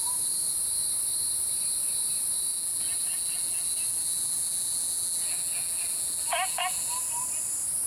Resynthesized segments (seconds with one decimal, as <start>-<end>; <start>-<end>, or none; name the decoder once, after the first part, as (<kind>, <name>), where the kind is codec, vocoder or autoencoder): 2.5-7.1 (vocoder, BigVGAN v2)